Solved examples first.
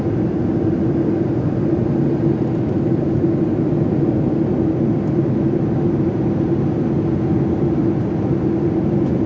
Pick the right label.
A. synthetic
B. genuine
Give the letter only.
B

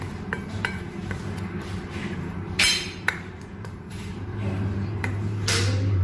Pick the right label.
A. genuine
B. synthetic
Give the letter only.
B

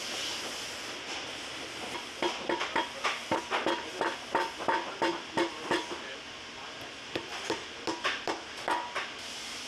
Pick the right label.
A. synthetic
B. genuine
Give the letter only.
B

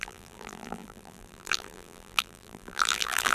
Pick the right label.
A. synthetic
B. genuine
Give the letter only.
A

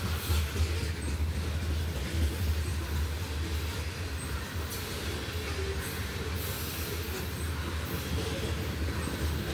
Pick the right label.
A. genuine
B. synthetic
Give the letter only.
A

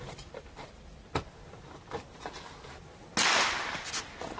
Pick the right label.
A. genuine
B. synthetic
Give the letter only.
A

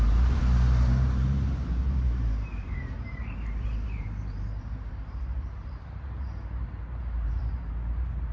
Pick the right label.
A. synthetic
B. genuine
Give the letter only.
A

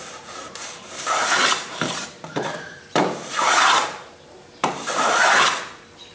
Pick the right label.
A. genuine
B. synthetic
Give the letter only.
B